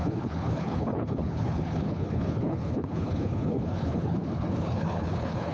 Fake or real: fake